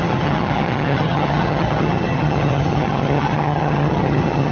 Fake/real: fake